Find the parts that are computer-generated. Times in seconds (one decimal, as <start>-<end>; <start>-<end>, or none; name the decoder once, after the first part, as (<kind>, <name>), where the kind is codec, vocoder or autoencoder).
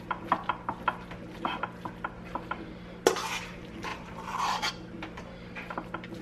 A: 3.9-4.7 (vocoder, BigVGAN v2)